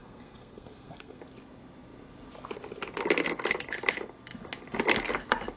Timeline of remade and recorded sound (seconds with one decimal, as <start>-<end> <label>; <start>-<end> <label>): 0.0-1.2 remade; 1.2-5.6 recorded